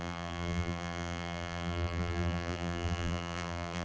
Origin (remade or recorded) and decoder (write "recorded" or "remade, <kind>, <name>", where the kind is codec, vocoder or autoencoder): remade, vocoder, BigVGAN v2